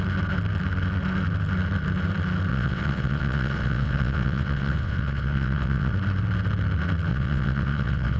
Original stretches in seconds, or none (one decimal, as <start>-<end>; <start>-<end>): 0.0-2.5; 5.9-7.1